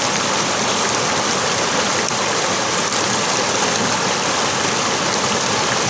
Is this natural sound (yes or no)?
yes